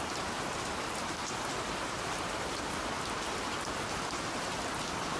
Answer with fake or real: real